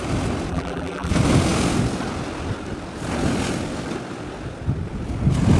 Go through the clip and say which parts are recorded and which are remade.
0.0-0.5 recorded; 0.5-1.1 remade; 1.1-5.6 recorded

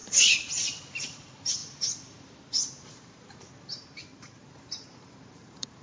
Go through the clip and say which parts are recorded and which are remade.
0.0-1.0 recorded; 1.0-1.6 remade; 1.6-2.7 recorded; 2.7-5.8 remade

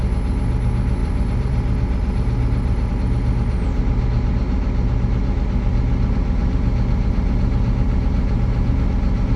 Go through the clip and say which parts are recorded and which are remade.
0.0-1.0 recorded; 1.0-2.9 remade; 2.9-9.4 recorded

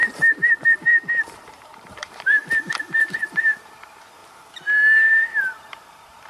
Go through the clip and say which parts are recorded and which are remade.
0.0-2.4 remade; 2.4-3.0 recorded; 3.0-4.2 remade; 4.2-5.2 recorded; 5.2-6.3 remade

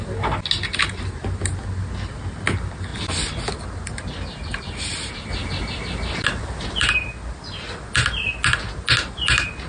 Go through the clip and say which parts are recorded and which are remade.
0.0-9.7 recorded

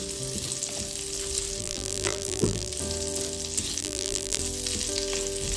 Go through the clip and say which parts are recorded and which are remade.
0.0-1.6 recorded; 1.6-2.7 remade; 2.7-3.8 recorded; 3.8-4.4 remade; 4.4-5.6 recorded

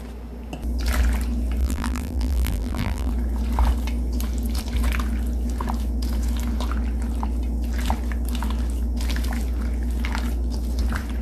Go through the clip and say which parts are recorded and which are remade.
0.0-1.6 recorded; 1.6-3.1 remade; 3.1-11.2 recorded

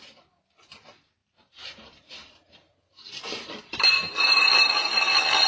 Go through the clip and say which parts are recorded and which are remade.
0.0-1.2 recorded; 1.2-4.5 remade; 4.5-5.5 recorded